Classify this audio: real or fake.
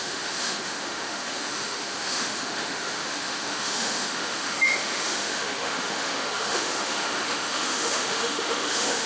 fake